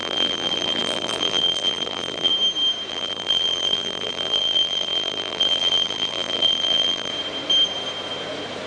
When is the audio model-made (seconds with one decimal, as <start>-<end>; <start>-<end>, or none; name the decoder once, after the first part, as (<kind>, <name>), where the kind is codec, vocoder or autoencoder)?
0.0-2.3 (vocoder, BigVGAN v2); 2.9-7.1